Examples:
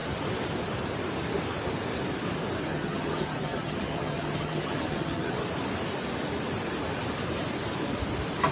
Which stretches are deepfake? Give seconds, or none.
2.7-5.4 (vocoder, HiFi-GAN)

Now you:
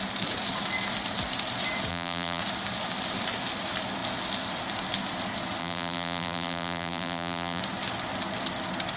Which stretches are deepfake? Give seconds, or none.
1.9-2.4 (vocoder, BigVGAN v2); 5.6-7.6

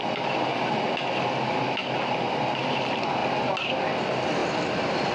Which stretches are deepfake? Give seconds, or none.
none

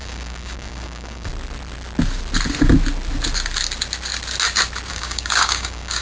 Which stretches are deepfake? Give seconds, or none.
0.0-1.3 (codec, DAC); 4.9-6.0

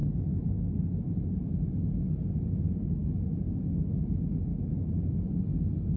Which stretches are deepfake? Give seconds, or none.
0.0-1.2 (autoencoder, DAC-VAE); 3.0-4.0

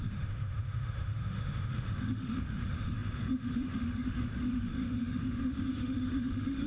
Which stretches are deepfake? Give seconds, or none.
0.0-6.7 (autoencoder, DAC-VAE)

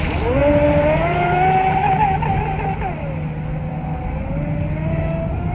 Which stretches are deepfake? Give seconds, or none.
none

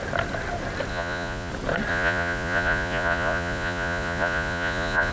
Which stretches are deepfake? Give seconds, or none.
0.9-1.5 (vocoder, Vocos); 1.9-5.1